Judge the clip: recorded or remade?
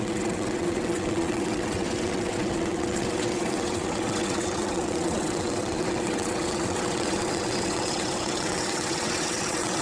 remade